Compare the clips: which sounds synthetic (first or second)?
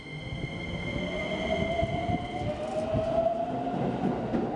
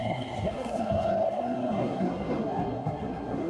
second